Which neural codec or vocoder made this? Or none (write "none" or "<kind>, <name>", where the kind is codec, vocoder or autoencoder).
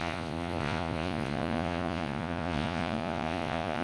vocoder, Vocos